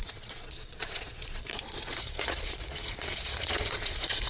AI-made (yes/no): yes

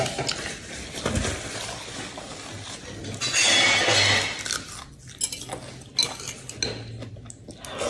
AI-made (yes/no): no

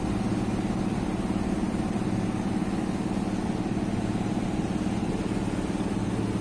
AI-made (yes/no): no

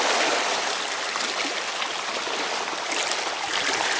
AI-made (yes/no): no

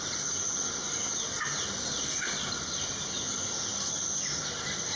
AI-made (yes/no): no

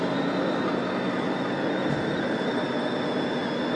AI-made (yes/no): no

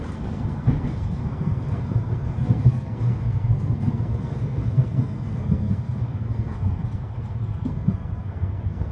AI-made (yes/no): yes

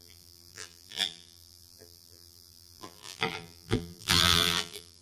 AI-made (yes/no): yes